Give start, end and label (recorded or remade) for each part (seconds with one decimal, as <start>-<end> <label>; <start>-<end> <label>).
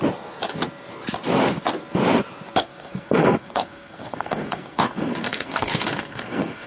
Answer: 0.0-2.6 recorded; 2.6-6.7 remade